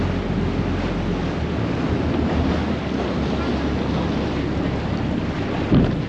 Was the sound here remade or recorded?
recorded